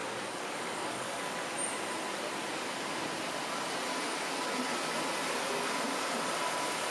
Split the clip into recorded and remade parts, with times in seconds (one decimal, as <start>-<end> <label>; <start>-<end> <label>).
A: 0.0-1.3 remade; 1.3-6.9 recorded